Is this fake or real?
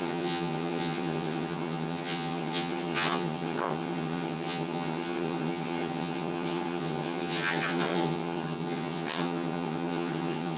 fake